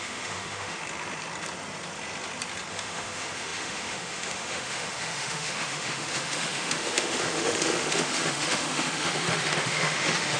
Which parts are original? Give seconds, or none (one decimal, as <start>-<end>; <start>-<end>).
0.8-2.7